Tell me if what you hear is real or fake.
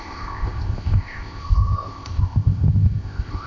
fake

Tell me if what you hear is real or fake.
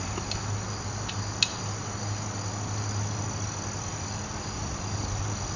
real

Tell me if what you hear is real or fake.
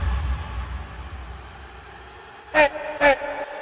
real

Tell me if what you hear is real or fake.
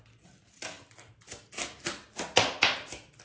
real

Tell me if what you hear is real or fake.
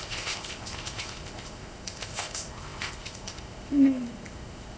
fake